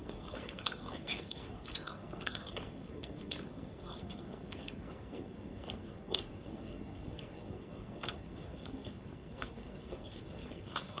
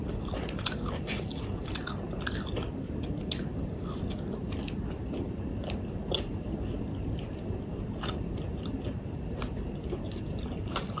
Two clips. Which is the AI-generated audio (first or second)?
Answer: first